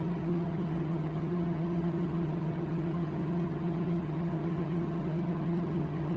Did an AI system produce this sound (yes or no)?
yes